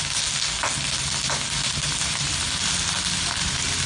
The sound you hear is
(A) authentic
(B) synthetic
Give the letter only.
A